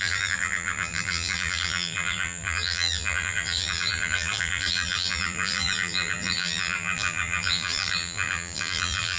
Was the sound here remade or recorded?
remade